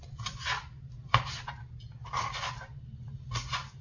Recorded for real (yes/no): yes